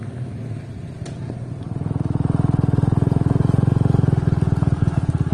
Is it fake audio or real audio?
real